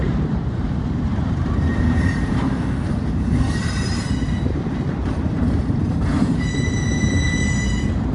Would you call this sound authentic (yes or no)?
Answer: no